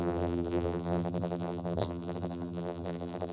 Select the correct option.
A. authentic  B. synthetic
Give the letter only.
B